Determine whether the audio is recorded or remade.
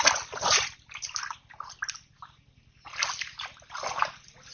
recorded